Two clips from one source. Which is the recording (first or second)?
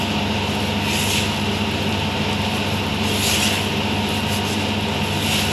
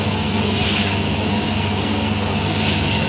first